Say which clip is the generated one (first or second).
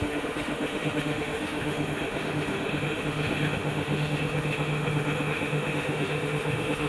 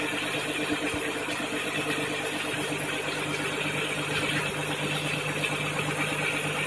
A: first